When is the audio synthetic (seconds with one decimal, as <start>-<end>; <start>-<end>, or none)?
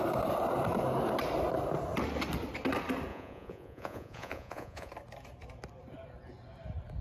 3.1-4.9